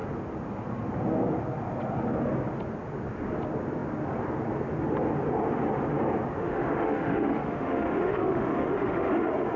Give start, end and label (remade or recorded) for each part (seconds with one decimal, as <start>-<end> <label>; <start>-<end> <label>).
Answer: 0.0-6.4 recorded; 6.4-9.1 remade; 9.1-9.6 recorded